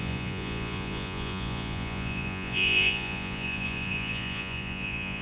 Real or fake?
fake